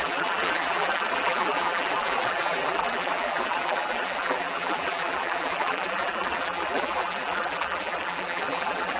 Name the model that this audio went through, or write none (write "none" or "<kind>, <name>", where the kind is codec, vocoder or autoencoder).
vocoder, BigVGAN v2